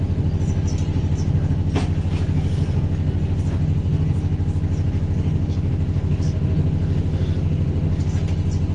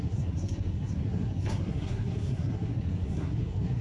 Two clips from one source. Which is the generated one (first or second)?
second